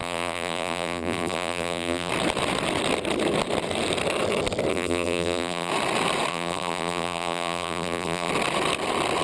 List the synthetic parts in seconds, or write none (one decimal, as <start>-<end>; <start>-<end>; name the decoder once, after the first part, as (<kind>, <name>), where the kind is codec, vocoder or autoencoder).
0.0-2.1 (vocoder, BigVGAN v2); 4.7-5.7; 6.3-8.3